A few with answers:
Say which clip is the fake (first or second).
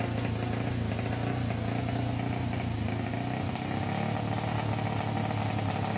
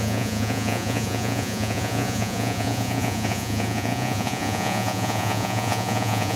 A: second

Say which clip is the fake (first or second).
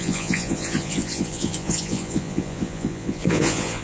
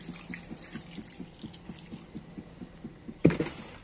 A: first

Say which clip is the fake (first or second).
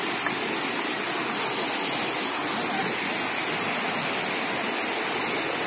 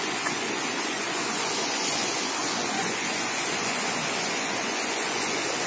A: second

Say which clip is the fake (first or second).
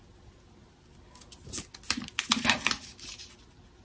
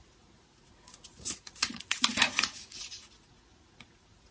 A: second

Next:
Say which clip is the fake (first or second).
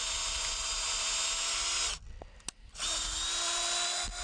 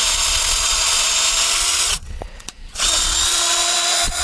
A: second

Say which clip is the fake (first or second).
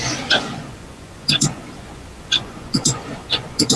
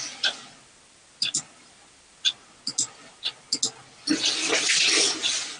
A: first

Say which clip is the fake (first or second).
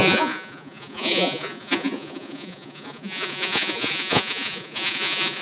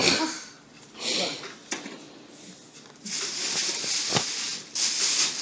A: first